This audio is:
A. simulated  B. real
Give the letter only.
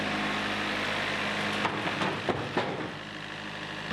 B